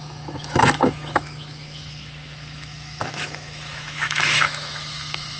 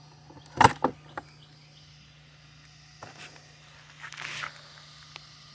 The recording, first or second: second